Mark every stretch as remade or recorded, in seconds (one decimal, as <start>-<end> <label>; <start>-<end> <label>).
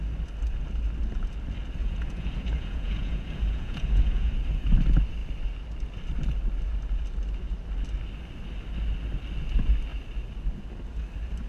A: 0.0-1.8 recorded; 1.8-4.3 remade; 4.3-11.5 recorded